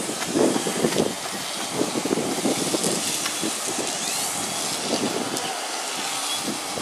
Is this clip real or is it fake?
real